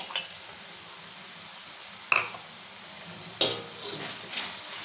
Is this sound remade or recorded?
recorded